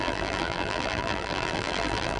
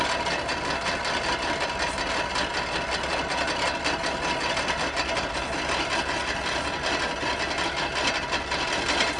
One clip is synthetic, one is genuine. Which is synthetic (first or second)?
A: first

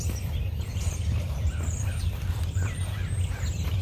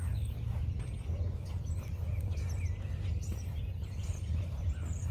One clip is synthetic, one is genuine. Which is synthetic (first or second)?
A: first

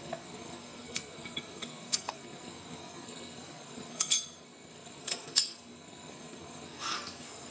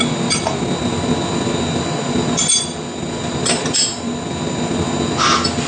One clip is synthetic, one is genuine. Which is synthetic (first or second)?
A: first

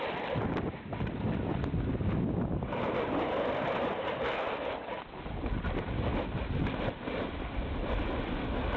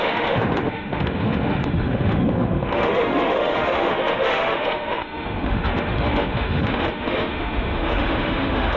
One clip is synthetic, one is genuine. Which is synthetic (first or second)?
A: second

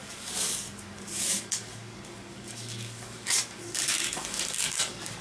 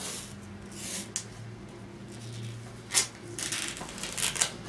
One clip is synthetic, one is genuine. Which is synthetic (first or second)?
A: first